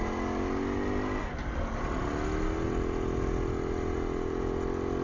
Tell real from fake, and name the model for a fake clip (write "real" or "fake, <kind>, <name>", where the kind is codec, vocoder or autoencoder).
real